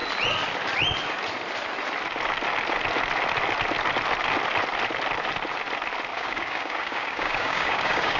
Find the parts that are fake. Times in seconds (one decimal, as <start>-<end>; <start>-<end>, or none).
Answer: 6.1-8.2